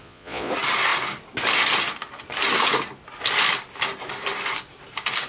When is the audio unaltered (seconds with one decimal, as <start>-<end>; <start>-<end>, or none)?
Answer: 0.5-5.3